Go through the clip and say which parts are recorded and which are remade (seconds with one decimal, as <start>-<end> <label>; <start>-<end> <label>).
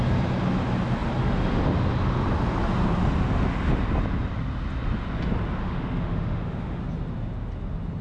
0.0-5.6 recorded; 5.6-6.8 remade; 6.8-8.0 recorded